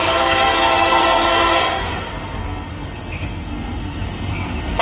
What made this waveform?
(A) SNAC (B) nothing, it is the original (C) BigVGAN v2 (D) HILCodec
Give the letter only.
A